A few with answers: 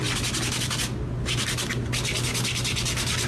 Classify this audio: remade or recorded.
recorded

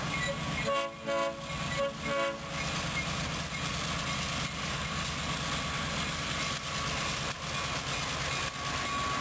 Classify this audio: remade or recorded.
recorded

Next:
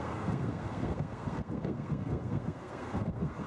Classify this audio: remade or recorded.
remade